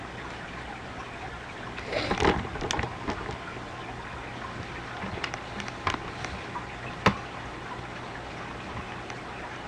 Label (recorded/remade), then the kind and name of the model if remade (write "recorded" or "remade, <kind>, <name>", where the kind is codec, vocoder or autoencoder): recorded